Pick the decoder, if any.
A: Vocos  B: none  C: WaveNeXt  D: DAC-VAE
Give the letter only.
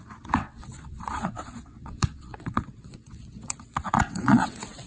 C